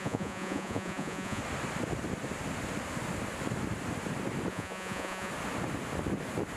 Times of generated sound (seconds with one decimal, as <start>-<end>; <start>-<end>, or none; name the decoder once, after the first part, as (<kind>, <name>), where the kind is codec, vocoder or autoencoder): 0.0-1.4 (vocoder, Vocos); 4.5-5.3